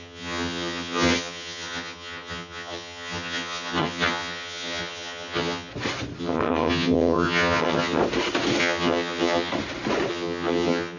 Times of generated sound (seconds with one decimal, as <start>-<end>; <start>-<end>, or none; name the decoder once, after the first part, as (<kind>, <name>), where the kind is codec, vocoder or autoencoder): 0.0-5.7 (vocoder, HiFi-GAN); 6.2-8.0; 8.6-9.5; 10.1-11.0